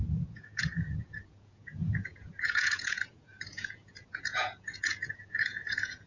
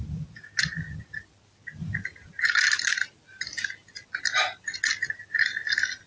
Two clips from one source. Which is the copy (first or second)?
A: first